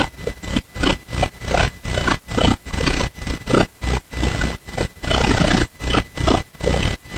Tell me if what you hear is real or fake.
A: real